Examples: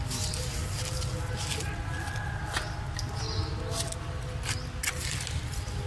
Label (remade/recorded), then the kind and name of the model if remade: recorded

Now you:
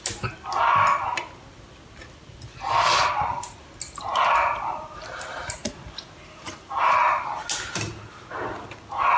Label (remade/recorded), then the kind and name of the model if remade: recorded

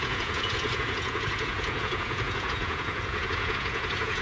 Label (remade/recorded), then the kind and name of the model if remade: remade, vocoder, Vocos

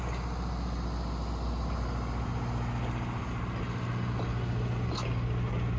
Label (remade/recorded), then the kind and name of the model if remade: recorded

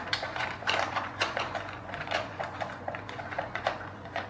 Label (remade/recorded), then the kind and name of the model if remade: remade, vocoder, Vocos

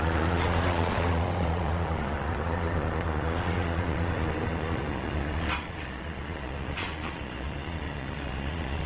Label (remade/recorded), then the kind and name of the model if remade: remade, vocoder, Vocos